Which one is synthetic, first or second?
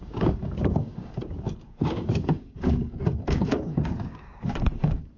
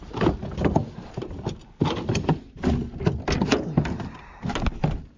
first